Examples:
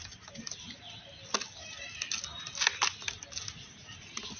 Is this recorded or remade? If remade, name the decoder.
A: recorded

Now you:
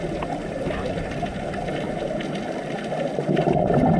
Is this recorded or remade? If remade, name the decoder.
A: recorded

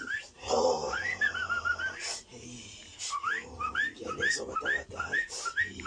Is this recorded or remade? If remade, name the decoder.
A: recorded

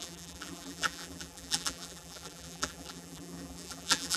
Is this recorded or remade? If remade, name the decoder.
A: remade, vocoder, BigVGAN v2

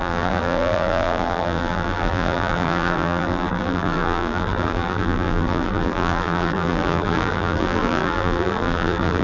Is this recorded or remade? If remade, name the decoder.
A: remade, vocoder, BigVGAN v2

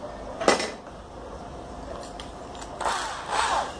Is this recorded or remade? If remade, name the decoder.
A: recorded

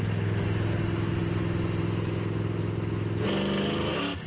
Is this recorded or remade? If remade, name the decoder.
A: recorded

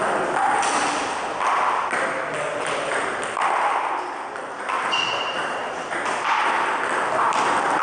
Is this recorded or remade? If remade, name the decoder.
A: recorded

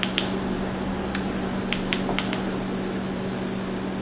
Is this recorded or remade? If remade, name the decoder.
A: recorded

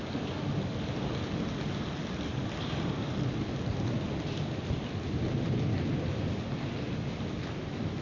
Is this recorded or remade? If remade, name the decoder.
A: recorded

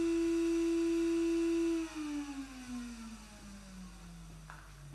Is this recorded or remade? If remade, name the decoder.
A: recorded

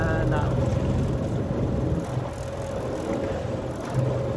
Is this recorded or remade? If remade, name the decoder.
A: recorded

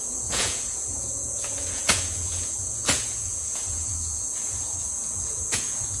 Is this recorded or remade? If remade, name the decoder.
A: remade, vocoder, Vocos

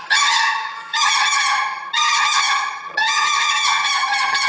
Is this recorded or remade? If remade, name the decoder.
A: remade, vocoder, HiFi-GAN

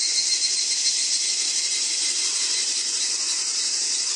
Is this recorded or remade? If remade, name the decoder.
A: recorded